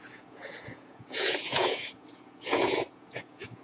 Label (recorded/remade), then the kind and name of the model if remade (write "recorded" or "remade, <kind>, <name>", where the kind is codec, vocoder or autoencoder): remade, vocoder, Vocos